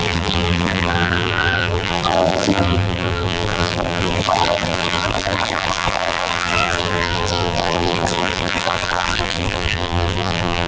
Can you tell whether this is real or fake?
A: fake